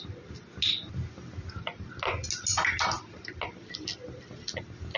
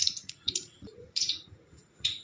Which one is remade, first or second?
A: second